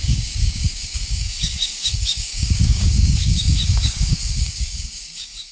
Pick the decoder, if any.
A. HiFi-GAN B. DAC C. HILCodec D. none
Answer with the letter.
B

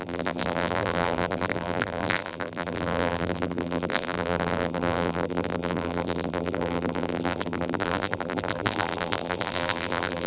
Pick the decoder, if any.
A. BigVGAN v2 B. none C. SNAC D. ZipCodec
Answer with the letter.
A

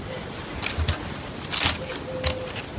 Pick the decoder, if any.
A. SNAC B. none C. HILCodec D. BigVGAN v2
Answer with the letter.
B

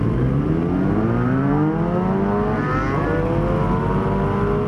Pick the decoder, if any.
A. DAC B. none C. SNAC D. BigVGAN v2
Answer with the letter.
B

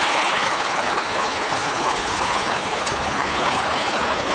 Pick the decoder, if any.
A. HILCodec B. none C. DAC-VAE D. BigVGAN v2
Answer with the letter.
A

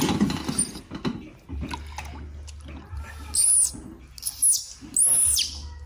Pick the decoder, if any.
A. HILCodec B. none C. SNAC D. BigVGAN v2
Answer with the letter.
B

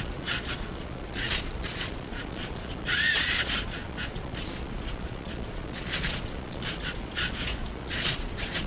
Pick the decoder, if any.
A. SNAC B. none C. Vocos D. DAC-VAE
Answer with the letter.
C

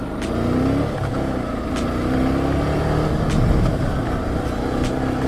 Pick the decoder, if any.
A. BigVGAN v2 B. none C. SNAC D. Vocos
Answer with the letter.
B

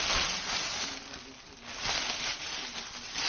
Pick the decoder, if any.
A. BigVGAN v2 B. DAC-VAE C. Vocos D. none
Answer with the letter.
D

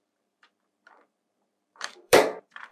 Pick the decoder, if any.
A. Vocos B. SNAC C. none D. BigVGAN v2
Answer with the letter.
D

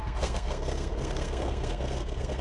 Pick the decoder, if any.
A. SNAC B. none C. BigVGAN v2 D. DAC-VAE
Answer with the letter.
A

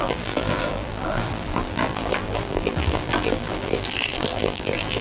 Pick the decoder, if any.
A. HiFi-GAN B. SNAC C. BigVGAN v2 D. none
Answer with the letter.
C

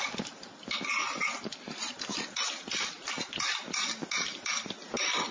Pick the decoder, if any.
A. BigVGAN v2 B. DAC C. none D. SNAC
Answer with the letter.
C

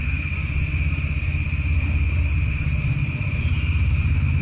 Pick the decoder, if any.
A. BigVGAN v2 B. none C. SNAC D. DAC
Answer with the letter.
B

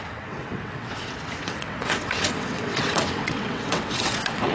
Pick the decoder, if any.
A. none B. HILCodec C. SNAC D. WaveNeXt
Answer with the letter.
D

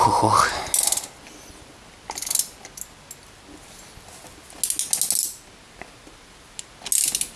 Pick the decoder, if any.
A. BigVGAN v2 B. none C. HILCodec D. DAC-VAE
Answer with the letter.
B